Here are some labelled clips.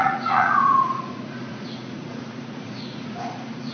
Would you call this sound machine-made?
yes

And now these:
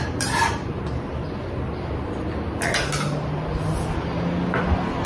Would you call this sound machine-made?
no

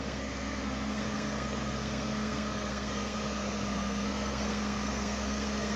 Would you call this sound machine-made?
yes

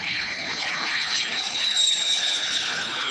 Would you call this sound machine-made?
yes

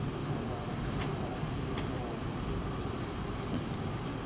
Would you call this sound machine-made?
yes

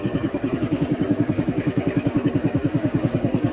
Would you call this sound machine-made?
yes